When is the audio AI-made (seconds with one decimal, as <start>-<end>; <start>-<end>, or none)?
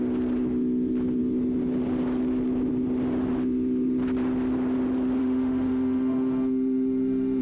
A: 5.2-7.4